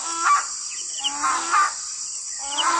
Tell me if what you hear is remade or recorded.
recorded